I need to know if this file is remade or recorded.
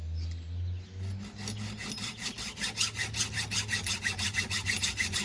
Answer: recorded